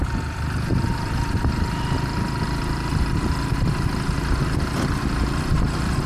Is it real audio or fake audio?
real